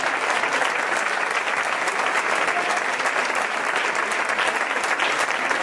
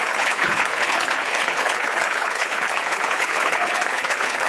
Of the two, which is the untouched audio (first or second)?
first